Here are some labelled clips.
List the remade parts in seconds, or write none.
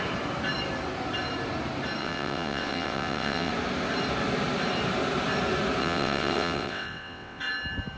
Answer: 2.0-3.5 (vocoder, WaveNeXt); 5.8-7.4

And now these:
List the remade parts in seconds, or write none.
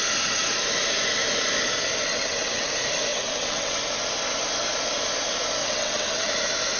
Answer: 2.1-2.7 (vocoder, WaveNeXt); 3.1-3.8; 5.6-6.3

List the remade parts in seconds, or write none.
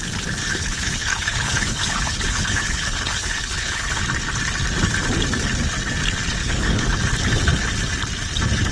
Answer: 0.4-4.0 (codec, HILCodec); 6.4-7.0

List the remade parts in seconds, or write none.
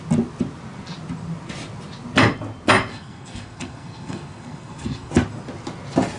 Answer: 2.9-5.1 (codec, SNAC)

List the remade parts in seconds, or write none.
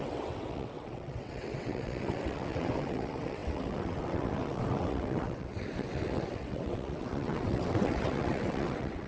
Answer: 0.0-9.1 (vocoder, WaveNeXt)